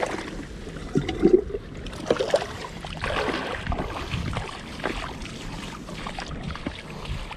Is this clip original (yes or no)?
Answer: yes